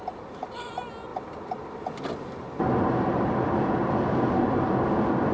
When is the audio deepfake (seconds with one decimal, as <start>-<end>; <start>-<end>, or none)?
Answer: none